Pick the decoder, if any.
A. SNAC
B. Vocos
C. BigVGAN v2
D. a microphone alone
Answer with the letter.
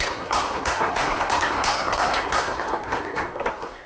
A